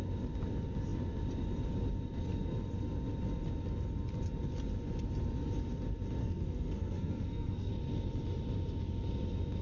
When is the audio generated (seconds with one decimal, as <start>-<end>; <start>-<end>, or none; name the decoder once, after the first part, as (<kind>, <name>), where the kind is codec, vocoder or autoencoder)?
6.2-7.7 (codec, SNAC)